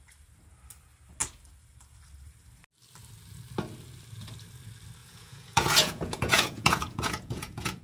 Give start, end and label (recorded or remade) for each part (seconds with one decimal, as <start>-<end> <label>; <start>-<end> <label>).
0.0-5.0 recorded; 5.0-7.8 remade